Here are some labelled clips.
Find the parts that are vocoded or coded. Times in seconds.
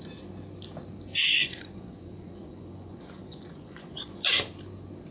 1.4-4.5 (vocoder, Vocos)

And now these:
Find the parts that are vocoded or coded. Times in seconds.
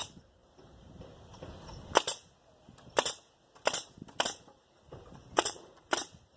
5.2-5.9 (vocoder, Vocos)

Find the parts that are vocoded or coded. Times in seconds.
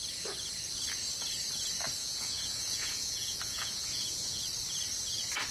2.0-4.4 (vocoder, Vocos)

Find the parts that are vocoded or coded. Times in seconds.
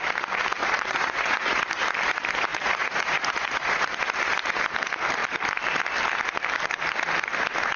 0.6-1.6 (vocoder, Vocos); 2.5-4.0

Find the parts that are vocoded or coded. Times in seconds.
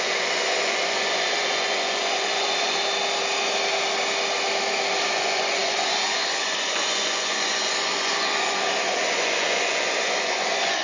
0.0-2.8 (vocoder, Vocos); 5.0-10.8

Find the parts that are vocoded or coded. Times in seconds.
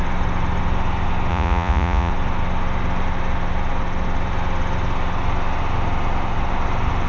1.3-2.1 (vocoder, Vocos)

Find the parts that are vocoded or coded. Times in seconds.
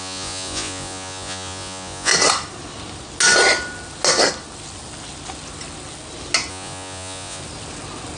0.0-2.1 (vocoder, Vocos); 6.5-7.4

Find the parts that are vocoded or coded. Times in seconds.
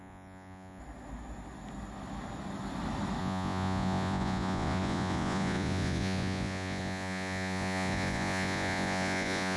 0.0-0.8 (vocoder, Vocos); 3.2-9.6